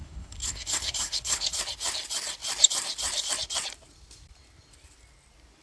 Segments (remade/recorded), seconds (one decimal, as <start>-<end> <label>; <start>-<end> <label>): 0.0-1.6 remade; 1.6-5.6 recorded